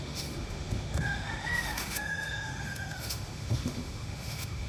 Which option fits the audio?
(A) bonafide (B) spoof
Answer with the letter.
B